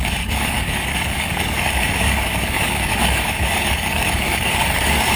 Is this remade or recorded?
remade